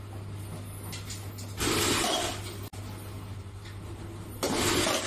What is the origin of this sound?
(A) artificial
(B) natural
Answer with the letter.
B